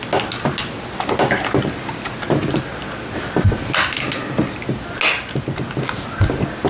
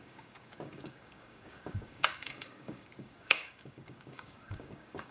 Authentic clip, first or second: first